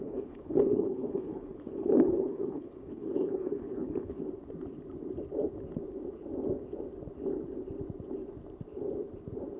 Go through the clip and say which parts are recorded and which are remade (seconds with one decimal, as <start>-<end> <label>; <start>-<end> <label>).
0.0-4.2 remade; 4.2-9.6 recorded